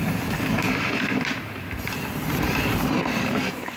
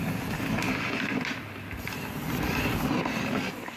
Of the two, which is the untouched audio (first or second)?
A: second